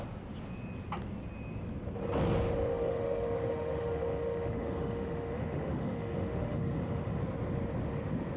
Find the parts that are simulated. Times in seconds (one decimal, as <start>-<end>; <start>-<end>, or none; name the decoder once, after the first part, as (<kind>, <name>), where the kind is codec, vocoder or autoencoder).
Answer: 2.7-7.2 (autoencoder, DAC-VAE)